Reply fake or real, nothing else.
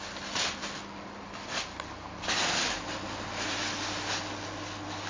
real